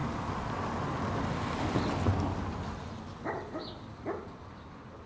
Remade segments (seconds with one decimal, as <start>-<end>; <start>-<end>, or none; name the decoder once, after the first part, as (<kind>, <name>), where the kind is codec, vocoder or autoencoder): none